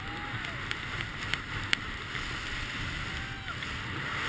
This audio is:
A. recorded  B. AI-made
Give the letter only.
A